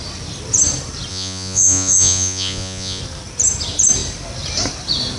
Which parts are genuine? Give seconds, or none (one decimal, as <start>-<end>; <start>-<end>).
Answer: 0.0-1.1; 3.0-5.2